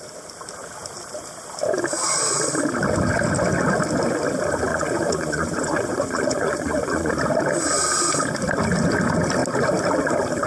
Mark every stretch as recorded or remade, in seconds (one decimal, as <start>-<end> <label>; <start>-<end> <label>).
0.0-4.7 recorded; 4.7-7.1 remade; 7.1-10.5 recorded